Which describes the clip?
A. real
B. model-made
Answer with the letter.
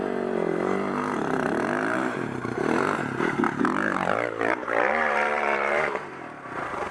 B